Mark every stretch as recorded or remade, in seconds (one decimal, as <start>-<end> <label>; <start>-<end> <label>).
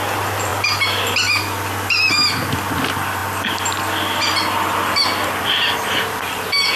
0.0-6.8 recorded